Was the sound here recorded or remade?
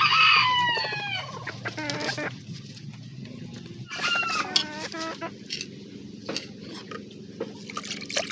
recorded